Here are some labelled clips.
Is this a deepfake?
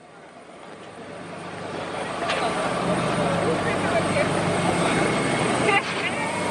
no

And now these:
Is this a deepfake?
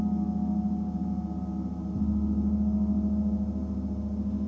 no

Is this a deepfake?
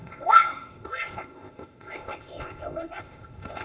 yes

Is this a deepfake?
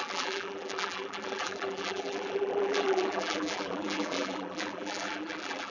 yes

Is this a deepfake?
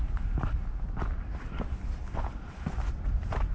no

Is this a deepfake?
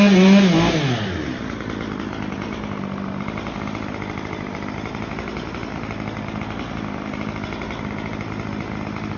no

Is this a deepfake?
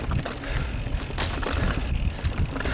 no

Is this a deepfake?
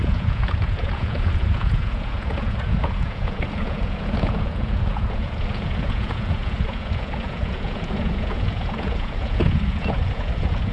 yes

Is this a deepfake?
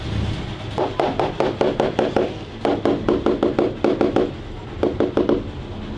no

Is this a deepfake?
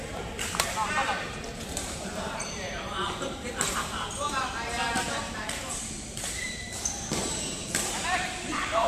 yes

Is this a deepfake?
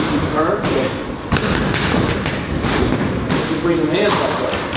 no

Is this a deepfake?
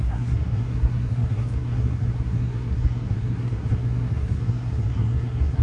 yes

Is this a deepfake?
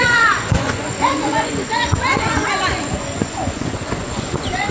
yes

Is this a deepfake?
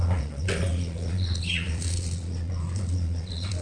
yes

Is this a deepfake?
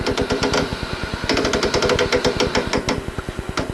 no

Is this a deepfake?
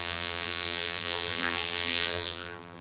yes